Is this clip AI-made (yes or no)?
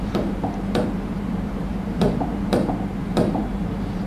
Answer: yes